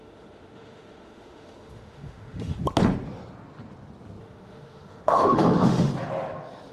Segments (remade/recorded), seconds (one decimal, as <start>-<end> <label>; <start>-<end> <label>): 0.0-2.6 remade; 2.6-4.2 recorded; 4.2-5.9 remade; 5.9-6.7 recorded

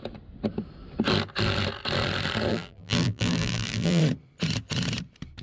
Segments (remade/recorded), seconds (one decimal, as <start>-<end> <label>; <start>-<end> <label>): 0.0-2.5 recorded; 2.5-4.0 remade; 4.0-5.4 recorded

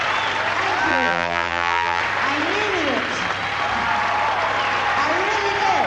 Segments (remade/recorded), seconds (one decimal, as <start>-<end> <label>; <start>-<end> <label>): 0.0-0.9 recorded; 0.9-2.0 remade; 2.0-5.9 recorded